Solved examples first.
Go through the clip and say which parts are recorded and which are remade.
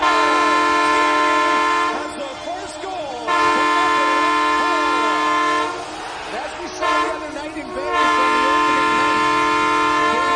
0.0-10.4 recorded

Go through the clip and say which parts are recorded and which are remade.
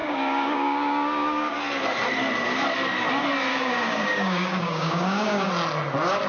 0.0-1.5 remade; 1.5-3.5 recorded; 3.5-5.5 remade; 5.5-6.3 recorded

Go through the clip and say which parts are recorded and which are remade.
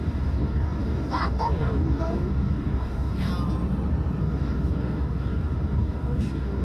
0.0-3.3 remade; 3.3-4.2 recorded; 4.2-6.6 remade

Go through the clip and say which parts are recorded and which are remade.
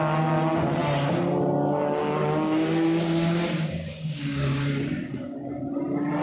0.0-2.0 recorded; 2.0-5.7 remade; 5.7-6.2 recorded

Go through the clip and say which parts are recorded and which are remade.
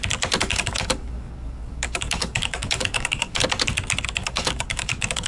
0.0-0.5 recorded; 0.5-3.4 remade; 3.4-4.2 recorded; 4.2-5.3 remade